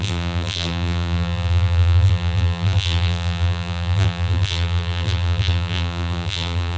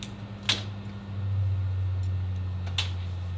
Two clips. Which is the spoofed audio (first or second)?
first